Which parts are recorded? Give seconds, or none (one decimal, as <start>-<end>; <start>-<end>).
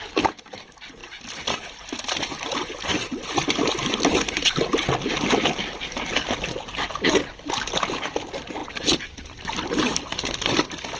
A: 0.0-11.0